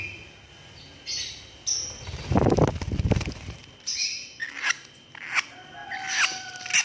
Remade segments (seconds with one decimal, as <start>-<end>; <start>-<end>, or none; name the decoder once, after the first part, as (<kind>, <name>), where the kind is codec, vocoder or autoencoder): none